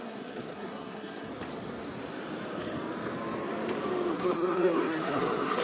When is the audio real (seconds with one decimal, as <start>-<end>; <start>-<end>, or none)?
1.3-4.1